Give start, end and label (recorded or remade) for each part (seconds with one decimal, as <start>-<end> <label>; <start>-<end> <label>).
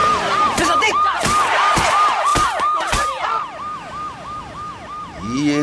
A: 0.0-5.6 recorded